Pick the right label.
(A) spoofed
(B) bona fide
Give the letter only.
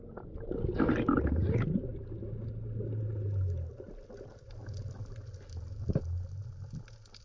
B